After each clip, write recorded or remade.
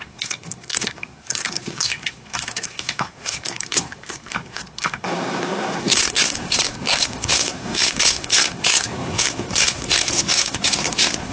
remade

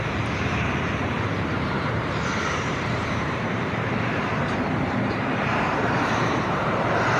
remade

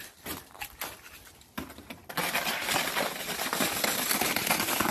recorded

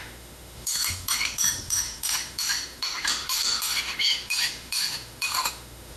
remade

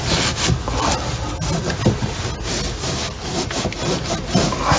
recorded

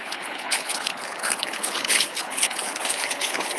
remade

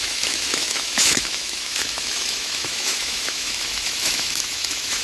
remade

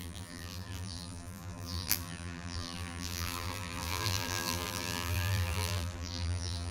remade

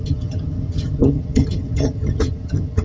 remade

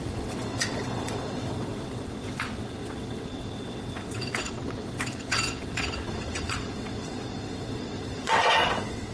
remade